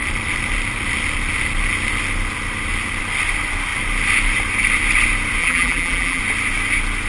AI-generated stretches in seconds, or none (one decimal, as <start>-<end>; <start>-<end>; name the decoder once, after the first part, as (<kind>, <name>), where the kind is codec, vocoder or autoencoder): 5.4-6.2 (vocoder, BigVGAN v2)

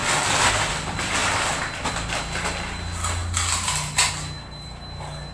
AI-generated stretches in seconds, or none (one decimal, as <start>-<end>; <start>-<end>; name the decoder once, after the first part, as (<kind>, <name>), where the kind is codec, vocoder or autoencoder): 0.0-0.7 (vocoder, BigVGAN v2)